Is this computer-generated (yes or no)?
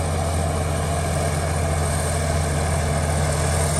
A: no